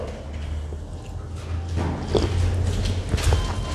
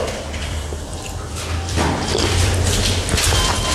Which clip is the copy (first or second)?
second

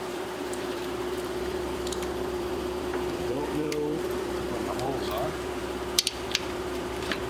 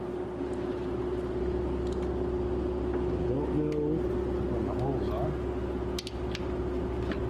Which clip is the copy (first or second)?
first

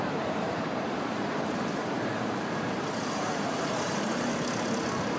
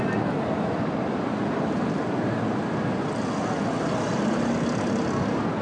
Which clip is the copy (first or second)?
first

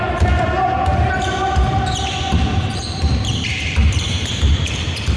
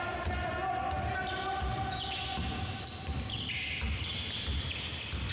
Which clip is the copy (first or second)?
first